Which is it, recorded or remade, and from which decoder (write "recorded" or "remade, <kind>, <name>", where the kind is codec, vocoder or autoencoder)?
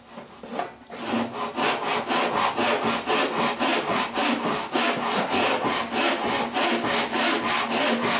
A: recorded